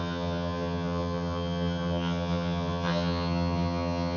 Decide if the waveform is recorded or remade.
remade